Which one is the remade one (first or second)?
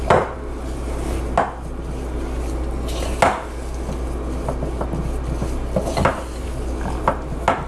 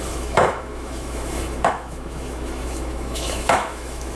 second